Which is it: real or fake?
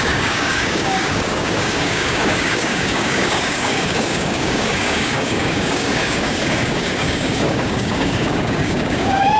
fake